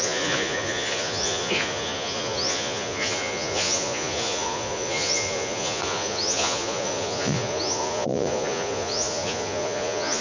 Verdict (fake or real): fake